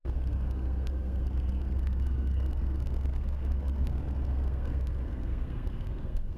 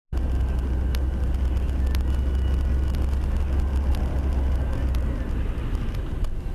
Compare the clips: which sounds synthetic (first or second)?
first